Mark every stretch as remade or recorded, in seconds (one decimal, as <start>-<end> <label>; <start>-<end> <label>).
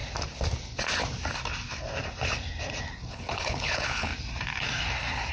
0.0-3.1 recorded; 3.1-4.1 remade; 4.1-5.3 recorded